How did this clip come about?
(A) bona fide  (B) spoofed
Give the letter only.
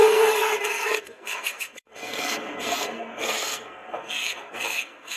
B